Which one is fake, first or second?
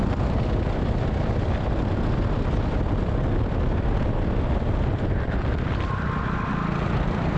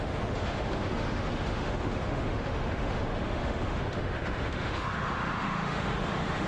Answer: second